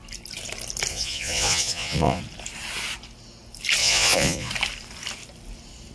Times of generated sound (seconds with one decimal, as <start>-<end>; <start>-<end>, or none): 0.9-2.2; 3.8-4.5